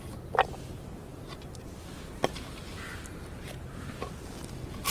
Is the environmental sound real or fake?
real